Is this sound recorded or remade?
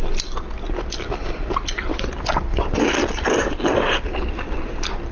recorded